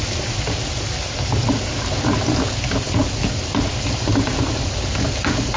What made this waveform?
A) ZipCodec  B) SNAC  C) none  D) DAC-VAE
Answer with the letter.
C